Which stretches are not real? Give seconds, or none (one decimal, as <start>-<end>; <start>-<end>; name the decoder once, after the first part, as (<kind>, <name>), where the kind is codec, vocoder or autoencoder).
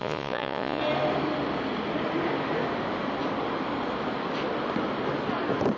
0.0-0.8 (vocoder, Vocos)